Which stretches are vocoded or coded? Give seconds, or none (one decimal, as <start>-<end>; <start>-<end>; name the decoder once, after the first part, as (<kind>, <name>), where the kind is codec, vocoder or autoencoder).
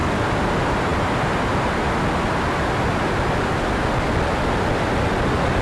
none